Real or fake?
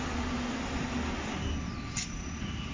real